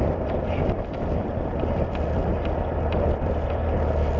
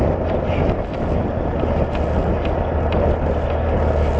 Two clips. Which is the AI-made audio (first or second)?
first